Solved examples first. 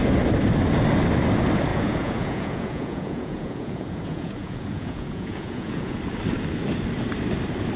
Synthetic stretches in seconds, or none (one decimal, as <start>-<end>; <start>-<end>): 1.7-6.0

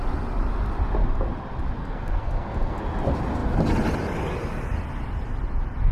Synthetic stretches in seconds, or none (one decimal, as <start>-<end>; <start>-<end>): 1.8-2.8

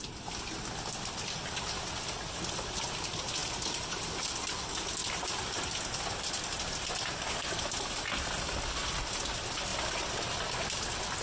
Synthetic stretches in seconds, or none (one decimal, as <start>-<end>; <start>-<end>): none